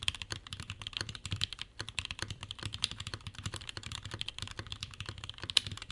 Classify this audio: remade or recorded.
remade